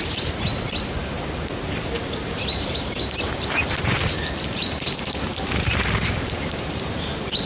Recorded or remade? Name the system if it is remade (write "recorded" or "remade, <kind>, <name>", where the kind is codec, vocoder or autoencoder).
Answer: remade, vocoder, BigVGAN v2